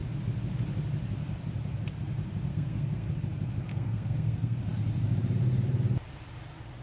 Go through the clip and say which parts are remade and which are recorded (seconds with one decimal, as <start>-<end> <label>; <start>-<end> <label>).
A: 0.0-2.5 recorded; 2.5-3.1 remade; 3.1-3.7 recorded; 3.7-4.6 remade; 4.6-6.8 recorded